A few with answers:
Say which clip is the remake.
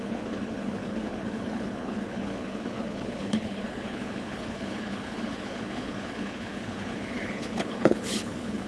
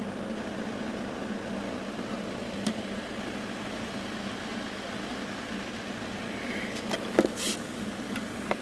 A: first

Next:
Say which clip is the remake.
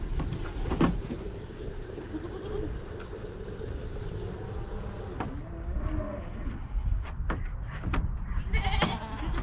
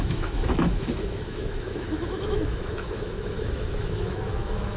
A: second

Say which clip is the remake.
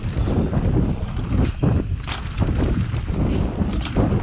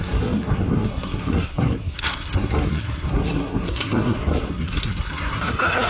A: second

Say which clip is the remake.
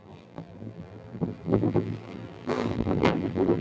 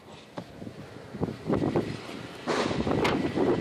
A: first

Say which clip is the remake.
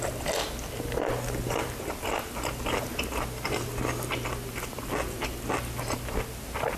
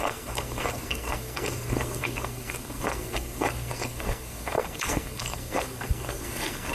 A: second